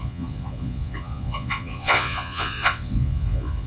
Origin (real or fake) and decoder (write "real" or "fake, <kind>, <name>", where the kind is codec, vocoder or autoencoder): fake, vocoder, Vocos